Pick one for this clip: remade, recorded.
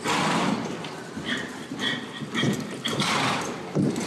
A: recorded